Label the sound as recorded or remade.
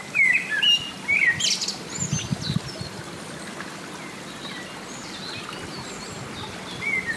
recorded